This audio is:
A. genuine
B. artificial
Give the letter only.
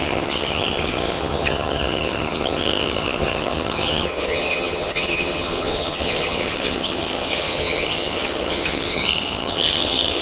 B